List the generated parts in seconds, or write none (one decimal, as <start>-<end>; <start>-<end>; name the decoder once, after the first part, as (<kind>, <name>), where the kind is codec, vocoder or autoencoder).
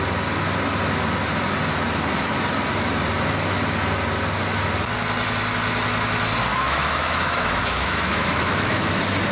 6.5-8.9 (autoencoder, DAC-VAE)